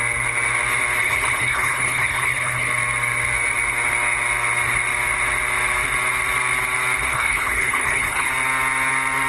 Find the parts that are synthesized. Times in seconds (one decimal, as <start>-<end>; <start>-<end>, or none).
1.0-2.7; 7.1-8.3